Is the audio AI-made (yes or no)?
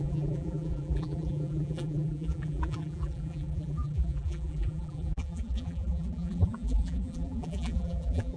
yes